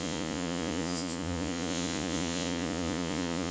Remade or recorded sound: remade